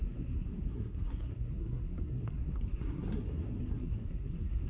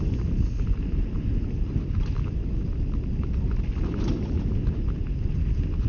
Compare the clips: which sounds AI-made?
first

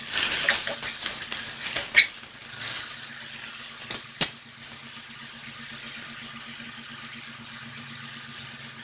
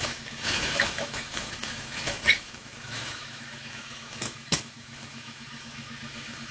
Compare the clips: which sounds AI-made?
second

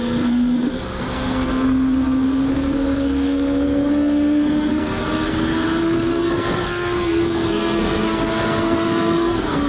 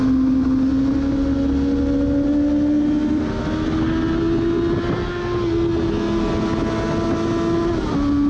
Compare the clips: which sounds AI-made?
first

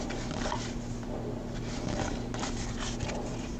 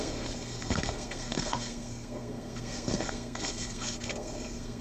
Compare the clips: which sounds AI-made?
second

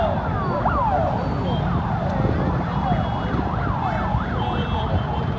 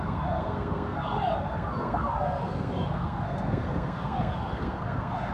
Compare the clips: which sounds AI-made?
second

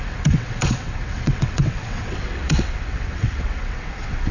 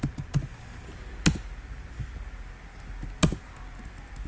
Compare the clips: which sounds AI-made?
first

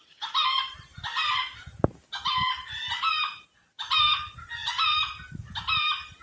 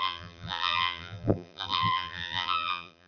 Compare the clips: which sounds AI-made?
second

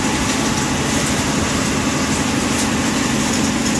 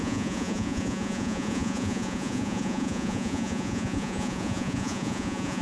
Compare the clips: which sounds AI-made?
second